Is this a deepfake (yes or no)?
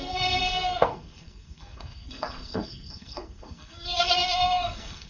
yes